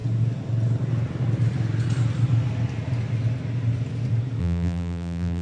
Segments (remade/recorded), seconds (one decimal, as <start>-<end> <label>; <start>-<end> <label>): 0.0-4.4 recorded; 4.4-5.4 remade